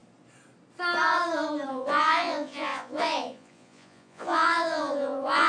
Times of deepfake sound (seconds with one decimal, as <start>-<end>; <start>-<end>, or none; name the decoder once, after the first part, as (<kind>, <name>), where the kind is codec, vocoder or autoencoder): 1.7-5.5 (vocoder, Vocos)